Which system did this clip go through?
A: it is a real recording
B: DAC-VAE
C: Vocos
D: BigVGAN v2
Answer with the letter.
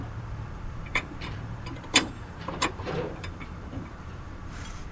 D